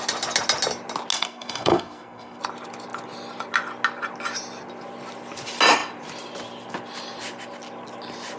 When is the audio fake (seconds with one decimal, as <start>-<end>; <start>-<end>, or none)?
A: 1.1-2.4